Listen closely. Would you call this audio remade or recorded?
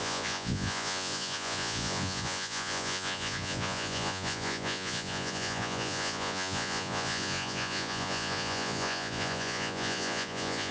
remade